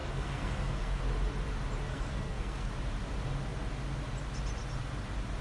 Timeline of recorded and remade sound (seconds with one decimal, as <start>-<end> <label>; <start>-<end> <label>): 0.0-1.0 remade; 1.0-1.9 recorded; 1.9-2.7 remade; 2.7-5.4 recorded